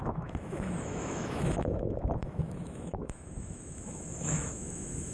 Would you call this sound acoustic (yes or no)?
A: no